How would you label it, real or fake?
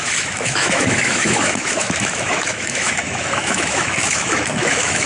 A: fake